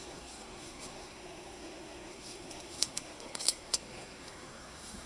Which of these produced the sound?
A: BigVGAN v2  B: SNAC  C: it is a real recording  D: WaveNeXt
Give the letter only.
B